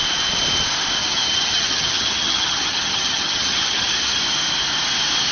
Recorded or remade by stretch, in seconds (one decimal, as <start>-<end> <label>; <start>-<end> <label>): 0.0-1.0 recorded; 1.0-4.2 remade; 4.2-5.3 recorded